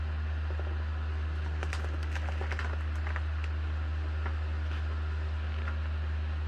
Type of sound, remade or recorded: recorded